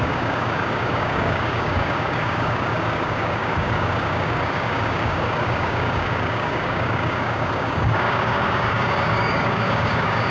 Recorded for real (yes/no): no